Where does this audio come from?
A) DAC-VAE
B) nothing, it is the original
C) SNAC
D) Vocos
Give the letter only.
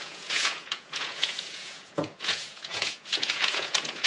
D